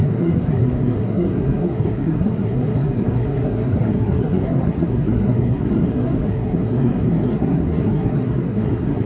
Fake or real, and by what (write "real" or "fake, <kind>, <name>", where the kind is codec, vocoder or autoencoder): fake, codec, SNAC